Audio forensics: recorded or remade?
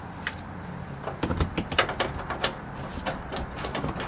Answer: recorded